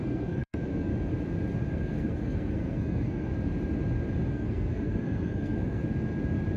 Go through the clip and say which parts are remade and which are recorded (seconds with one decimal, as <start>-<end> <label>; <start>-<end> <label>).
0.0-0.9 remade; 0.9-1.6 recorded; 1.6-3.3 remade; 3.3-4.3 recorded; 4.3-5.8 remade; 5.8-6.6 recorded